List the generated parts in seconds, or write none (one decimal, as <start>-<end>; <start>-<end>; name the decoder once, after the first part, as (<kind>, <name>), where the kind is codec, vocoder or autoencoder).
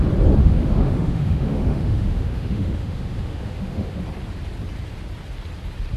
0.4-4.0 (autoencoder, DAC-VAE)